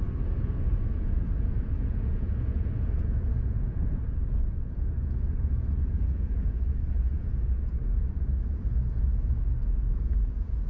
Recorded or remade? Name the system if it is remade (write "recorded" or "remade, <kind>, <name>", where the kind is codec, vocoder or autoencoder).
remade, vocoder, Vocos